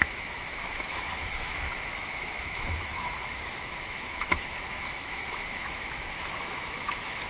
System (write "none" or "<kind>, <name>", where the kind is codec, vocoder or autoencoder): autoencoder, DAC-VAE